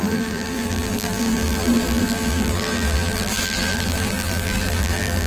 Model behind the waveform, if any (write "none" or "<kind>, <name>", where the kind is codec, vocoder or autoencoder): vocoder, BigVGAN v2